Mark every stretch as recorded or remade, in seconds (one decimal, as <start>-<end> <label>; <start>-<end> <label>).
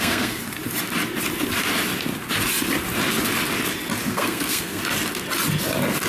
0.0-0.4 remade; 0.4-4.1 recorded; 4.1-4.8 remade; 4.8-6.1 recorded